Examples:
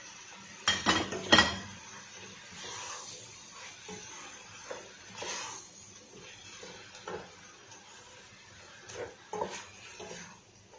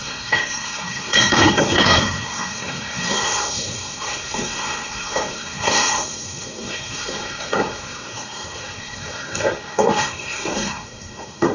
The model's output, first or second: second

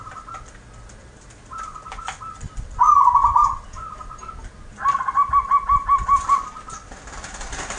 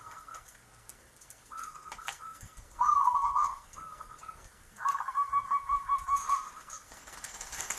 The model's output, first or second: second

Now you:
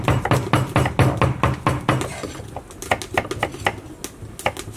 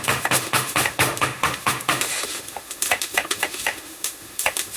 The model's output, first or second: second